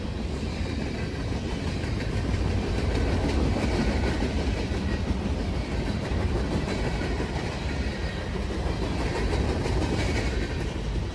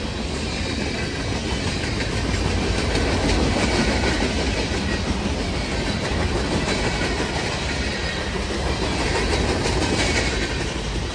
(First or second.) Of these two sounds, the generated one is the first